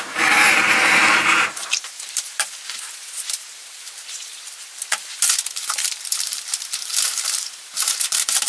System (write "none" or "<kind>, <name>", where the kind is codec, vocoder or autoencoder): vocoder, BigVGAN v2